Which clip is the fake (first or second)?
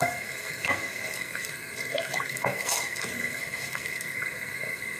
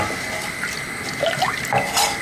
first